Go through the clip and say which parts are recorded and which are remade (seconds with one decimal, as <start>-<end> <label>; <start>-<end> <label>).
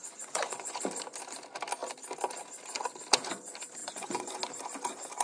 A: 0.0-0.8 remade; 0.8-3.8 recorded; 3.8-4.4 remade; 4.4-5.2 recorded